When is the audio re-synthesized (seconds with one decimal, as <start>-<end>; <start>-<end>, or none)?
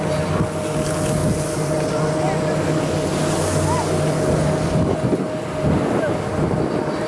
none